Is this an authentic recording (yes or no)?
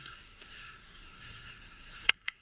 no